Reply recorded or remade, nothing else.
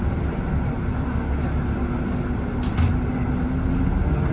recorded